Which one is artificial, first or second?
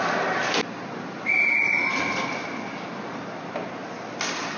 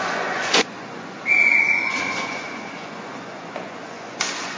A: second